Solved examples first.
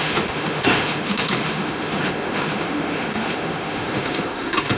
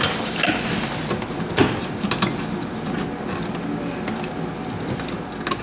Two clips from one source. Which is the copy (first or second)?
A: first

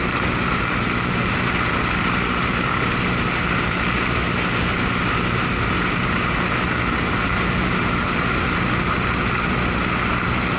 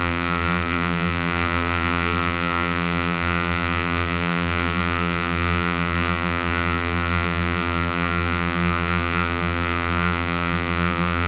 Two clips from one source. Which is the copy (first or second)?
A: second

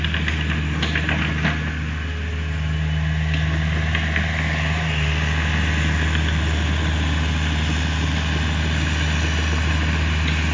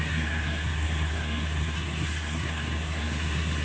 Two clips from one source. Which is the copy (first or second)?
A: second